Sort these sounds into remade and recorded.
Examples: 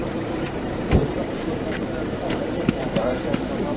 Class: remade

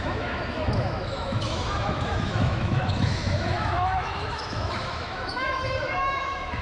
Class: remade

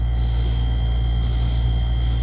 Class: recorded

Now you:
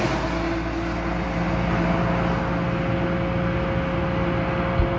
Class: recorded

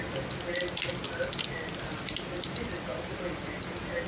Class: recorded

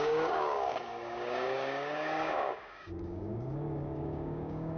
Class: remade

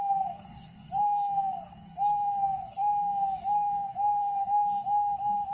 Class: remade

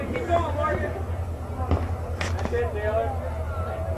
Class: recorded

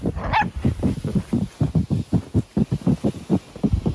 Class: recorded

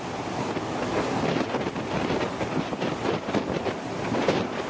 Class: recorded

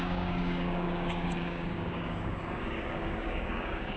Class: remade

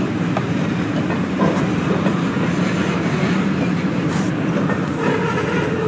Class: recorded